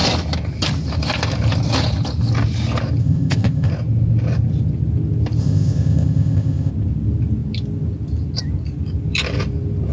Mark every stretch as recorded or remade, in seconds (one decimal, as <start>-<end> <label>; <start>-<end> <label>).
0.0-3.0 recorded; 3.0-3.7 remade; 3.7-5.4 recorded; 5.4-6.7 remade; 6.7-9.9 recorded